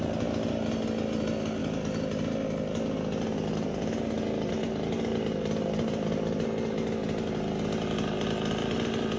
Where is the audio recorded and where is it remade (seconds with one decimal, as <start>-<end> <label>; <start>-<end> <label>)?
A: 0.0-9.2 recorded